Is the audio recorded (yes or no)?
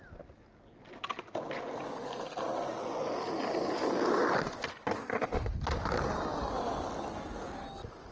yes